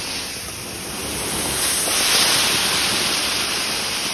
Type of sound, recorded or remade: recorded